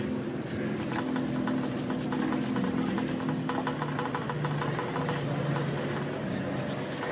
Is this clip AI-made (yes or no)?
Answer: no